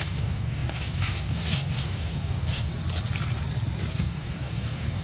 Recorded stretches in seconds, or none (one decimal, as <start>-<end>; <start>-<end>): 2.7-3.9